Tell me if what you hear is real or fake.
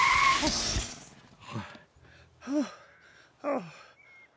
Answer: real